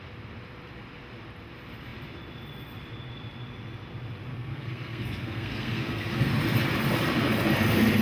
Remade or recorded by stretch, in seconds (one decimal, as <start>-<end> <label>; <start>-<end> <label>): 0.0-4.3 recorded; 4.3-6.3 remade; 6.3-8.0 recorded